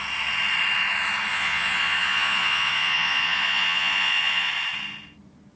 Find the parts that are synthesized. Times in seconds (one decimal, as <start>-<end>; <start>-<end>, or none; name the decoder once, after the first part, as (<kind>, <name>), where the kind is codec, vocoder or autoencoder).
1.3-4.5 (vocoder, Vocos)